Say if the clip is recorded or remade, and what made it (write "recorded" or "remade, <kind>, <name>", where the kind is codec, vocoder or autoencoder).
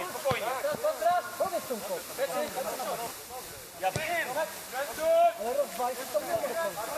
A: recorded